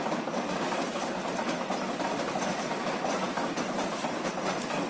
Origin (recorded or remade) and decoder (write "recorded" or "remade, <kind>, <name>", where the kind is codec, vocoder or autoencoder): recorded